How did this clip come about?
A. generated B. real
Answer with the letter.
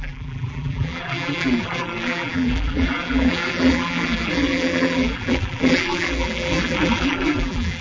A